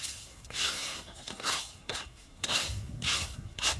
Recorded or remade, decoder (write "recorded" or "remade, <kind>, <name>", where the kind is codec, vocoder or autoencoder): remade, codec, SNAC